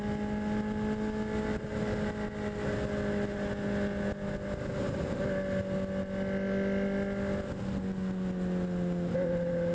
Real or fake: real